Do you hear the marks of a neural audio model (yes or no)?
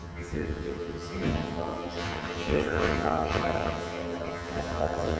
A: yes